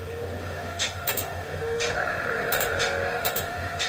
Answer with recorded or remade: remade